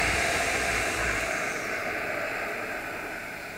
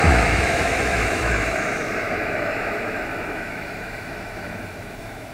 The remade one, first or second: second